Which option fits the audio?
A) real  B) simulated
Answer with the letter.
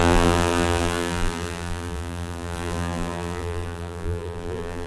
B